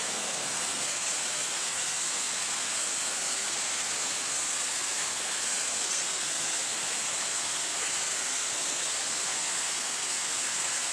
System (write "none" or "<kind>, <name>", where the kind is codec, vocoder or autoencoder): codec, SNAC